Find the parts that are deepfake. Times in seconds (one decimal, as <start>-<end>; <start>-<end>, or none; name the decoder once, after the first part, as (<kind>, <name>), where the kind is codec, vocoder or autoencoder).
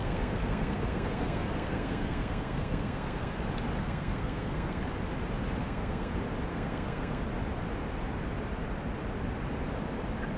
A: 0.0-3.4 (codec, SNAC); 3.8-4.8; 5.6-6.1; 6.5-7.2